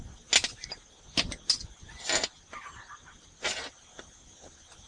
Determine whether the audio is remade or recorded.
recorded